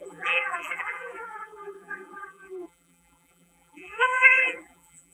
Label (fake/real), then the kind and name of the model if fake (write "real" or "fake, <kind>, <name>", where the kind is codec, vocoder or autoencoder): fake, vocoder, BigVGAN v2